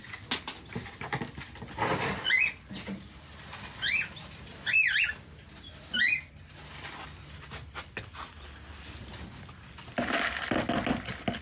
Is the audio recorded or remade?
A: recorded